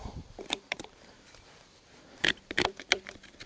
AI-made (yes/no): yes